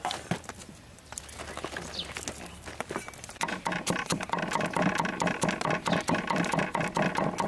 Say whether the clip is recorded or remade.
recorded